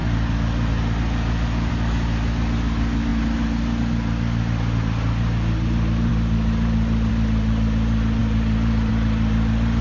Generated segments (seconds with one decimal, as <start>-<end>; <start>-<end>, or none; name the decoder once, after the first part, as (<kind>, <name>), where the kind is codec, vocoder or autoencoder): none